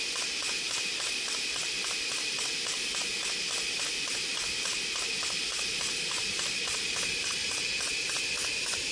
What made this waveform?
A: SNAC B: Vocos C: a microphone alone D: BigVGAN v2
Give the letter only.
C